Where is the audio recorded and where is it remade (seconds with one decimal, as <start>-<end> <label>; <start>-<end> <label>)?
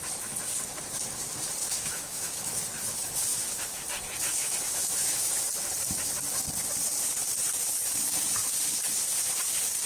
0.0-1.6 recorded; 1.6-2.6 remade; 2.6-3.3 recorded; 3.3-3.8 remade; 3.8-4.3 recorded; 4.3-5.4 remade; 5.4-9.9 recorded